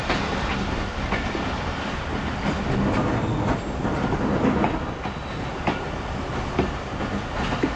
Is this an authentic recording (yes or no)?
yes